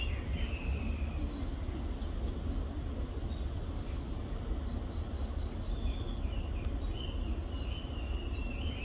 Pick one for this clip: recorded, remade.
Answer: recorded